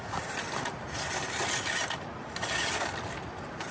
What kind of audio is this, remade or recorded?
recorded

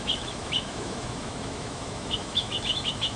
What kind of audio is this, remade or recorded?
remade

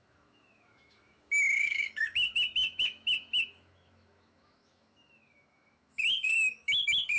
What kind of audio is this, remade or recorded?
remade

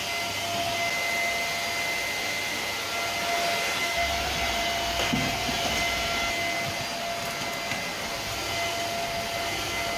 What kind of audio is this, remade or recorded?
recorded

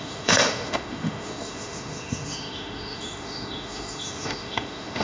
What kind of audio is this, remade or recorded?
remade